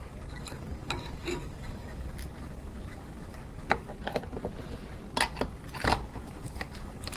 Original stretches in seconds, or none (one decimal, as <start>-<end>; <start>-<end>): 3.9-5.8

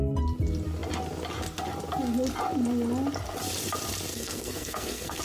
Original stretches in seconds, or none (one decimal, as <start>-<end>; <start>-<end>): 0.0-4.1

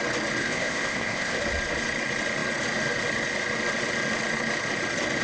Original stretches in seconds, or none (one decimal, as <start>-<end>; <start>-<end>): 0.0-0.4; 1.4-5.2